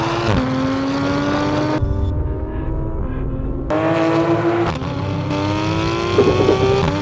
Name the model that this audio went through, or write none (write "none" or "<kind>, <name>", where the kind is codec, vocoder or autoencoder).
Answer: none